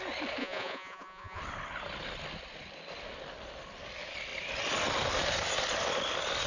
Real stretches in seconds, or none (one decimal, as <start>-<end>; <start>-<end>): 0.0-0.4; 1.4-6.5